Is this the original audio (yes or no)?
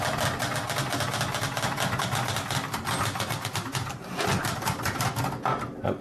yes